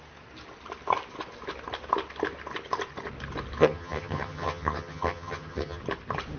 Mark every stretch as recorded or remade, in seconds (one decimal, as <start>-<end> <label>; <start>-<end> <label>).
0.0-3.6 recorded; 3.6-5.8 remade; 5.8-6.4 recorded

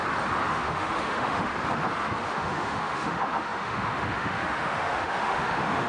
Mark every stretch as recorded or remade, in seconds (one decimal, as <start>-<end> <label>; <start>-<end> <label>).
0.0-0.5 recorded; 0.5-1.5 remade; 1.5-2.2 recorded; 2.2-5.9 remade